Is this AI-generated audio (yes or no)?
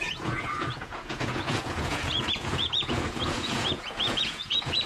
yes